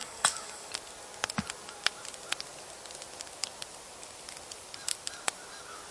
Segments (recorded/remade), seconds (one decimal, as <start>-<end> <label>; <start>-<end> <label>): 0.0-0.7 remade; 0.7-5.9 recorded